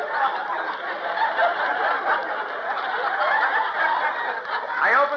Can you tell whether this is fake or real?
real